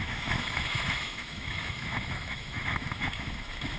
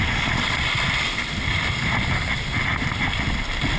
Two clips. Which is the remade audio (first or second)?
first